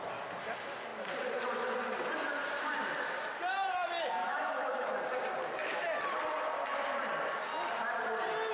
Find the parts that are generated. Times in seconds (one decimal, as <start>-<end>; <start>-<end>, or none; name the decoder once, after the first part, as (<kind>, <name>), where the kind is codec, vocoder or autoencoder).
4.2-5.0 (autoencoder, DAC-VAE)